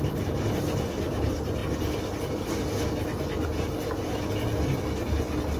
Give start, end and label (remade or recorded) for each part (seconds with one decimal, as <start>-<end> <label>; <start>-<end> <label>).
0.0-5.6 recorded